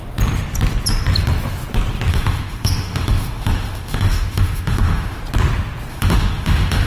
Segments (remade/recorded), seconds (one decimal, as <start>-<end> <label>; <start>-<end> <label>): 0.0-2.1 recorded; 2.1-5.2 remade; 5.2-5.9 recorded; 5.9-6.9 remade